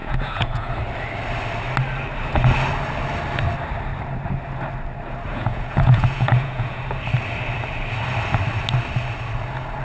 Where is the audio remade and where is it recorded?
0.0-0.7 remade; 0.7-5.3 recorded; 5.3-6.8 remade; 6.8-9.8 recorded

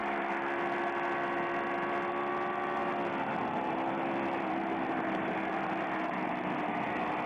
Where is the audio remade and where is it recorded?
0.0-7.3 recorded

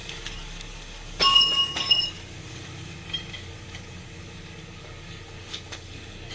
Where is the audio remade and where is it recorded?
0.0-6.3 remade

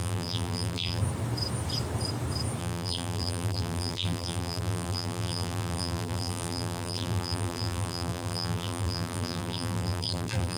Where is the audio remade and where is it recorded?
0.0-1.0 remade; 1.0-2.6 recorded; 2.6-10.6 remade

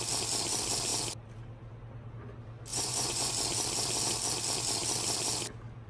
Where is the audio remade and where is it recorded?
0.0-2.7 recorded; 2.7-3.3 remade; 3.3-5.9 recorded